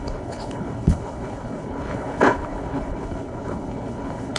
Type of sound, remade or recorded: remade